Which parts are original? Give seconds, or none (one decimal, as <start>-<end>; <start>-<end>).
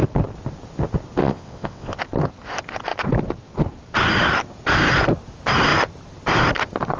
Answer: 0.0-1.2; 2.0-7.0